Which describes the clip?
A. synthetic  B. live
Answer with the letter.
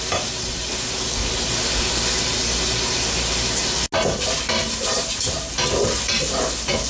B